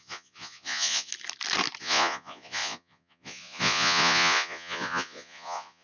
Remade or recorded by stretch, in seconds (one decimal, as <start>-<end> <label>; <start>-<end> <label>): 0.0-1.1 remade; 1.1-1.8 recorded; 1.8-5.8 remade